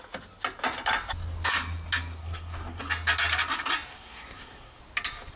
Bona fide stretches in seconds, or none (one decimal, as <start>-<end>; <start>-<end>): 0.0-2.2; 2.8-3.9; 4.8-5.4